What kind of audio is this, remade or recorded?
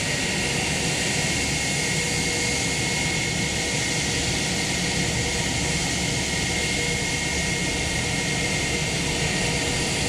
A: recorded